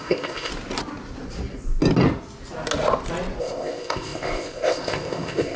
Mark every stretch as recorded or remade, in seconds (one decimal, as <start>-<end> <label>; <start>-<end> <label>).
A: 0.0-0.5 remade; 0.5-3.4 recorded; 3.4-5.6 remade